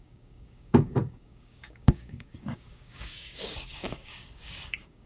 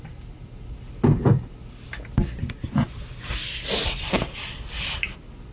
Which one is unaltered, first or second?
second